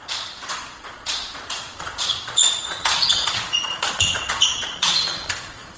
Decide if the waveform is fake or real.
fake